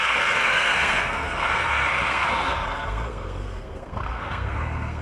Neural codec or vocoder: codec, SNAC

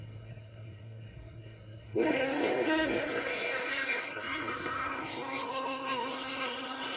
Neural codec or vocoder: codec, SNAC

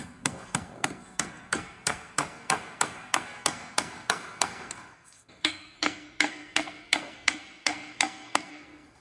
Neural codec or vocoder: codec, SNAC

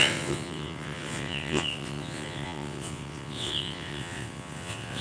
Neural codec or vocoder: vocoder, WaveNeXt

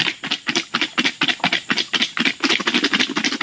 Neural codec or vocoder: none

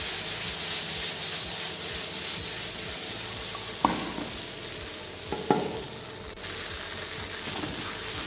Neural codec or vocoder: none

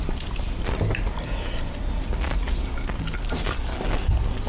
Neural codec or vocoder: none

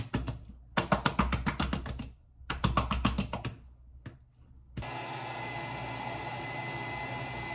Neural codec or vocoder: none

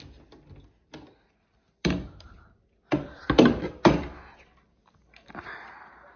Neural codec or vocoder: none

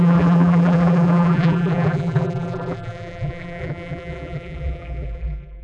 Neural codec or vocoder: vocoder, BigVGAN v2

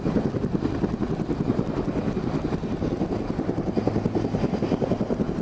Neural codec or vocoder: none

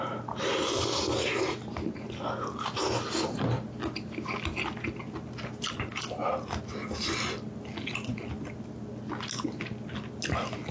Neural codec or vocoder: none